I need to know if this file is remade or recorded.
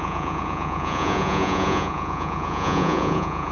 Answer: remade